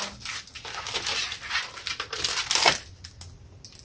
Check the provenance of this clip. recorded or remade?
recorded